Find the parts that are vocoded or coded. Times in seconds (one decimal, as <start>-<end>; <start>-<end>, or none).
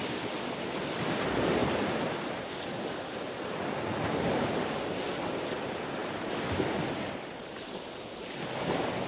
none